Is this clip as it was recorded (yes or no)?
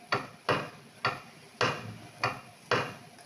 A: yes